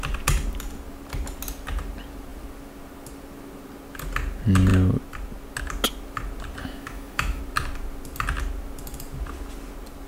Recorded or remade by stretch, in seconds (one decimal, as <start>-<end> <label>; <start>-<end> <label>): 0.0-6.6 recorded; 6.6-7.4 remade; 7.4-10.1 recorded